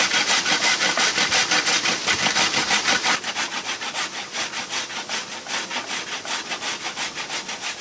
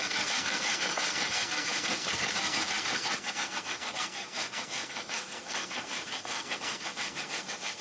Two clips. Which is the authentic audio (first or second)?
first